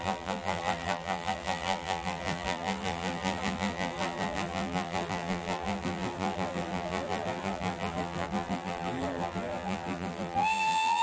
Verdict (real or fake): fake